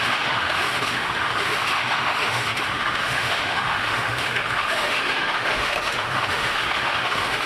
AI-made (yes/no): yes